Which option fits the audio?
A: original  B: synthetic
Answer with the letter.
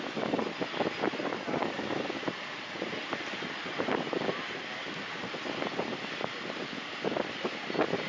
A